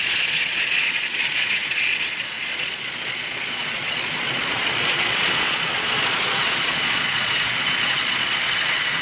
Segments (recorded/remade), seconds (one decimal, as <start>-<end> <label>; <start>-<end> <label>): 0.0-9.0 remade